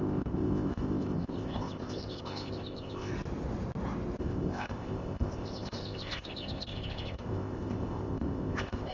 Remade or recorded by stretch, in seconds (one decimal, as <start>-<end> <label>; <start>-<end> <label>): 0.0-3.1 remade; 3.1-4.2 recorded; 4.2-8.9 remade